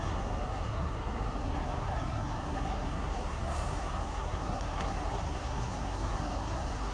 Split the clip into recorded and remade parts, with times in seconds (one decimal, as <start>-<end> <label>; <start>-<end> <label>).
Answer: 0.0-6.9 remade